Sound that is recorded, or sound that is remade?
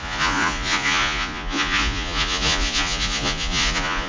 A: remade